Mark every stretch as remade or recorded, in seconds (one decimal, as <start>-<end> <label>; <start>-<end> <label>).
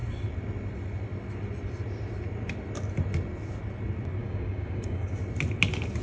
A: 0.0-4.2 recorded; 4.2-5.2 remade; 5.2-6.0 recorded